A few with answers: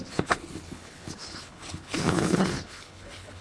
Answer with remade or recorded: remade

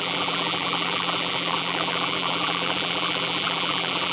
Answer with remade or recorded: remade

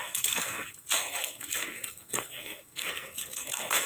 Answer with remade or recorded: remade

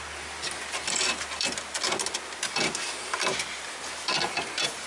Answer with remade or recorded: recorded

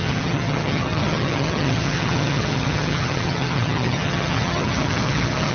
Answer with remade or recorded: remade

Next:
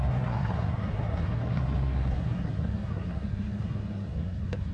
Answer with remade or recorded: remade